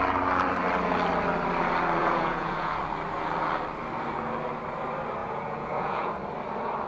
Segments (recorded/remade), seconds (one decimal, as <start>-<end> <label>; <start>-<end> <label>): 0.0-2.0 recorded; 2.0-2.8 remade; 2.8-5.2 recorded; 5.2-6.1 remade; 6.1-6.9 recorded